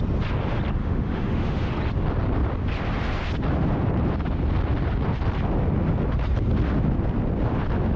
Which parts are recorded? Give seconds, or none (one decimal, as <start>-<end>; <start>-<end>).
0.0-0.8; 1.7-8.0